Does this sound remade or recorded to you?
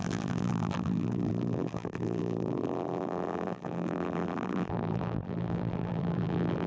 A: remade